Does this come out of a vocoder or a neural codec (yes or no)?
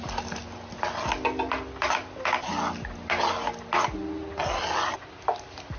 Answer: no